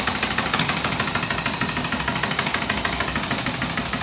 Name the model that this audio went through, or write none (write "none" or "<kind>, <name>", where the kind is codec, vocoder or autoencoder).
none